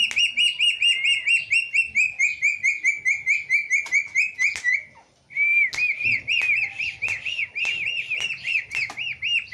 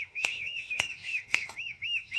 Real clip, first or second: first